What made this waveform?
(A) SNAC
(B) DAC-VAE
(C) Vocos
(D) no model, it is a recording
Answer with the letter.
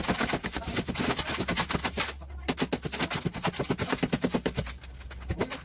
D